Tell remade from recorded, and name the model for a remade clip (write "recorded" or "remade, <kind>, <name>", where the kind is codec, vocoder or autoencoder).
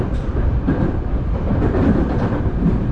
remade, vocoder, BigVGAN v2